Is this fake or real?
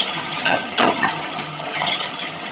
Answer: fake